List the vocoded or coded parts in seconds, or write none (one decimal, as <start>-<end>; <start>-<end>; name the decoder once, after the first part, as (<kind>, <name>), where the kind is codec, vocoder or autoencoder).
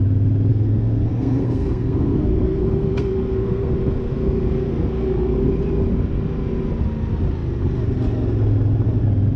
0.5-5.5 (codec, SNAC)